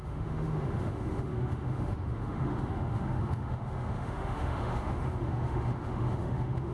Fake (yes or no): yes